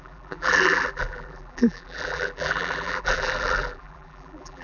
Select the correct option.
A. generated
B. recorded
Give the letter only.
A